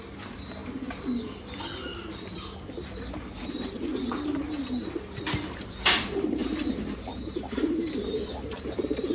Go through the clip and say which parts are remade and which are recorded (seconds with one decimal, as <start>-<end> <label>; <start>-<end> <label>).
0.0-0.6 remade; 0.6-3.5 recorded; 3.5-3.9 remade; 3.9-5.2 recorded; 5.2-9.1 remade